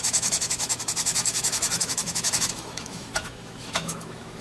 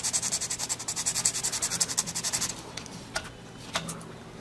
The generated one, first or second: first